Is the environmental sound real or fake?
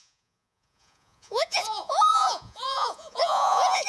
fake